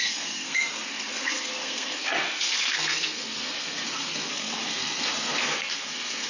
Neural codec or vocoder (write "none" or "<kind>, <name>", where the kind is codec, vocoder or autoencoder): codec, SNAC